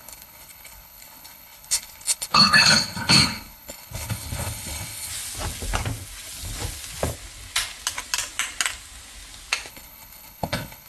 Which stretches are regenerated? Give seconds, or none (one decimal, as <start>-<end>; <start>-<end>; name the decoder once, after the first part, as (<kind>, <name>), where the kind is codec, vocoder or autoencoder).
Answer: 0.0-5.1 (codec, HILCodec); 9.7-10.9